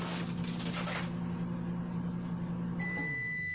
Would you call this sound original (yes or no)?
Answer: yes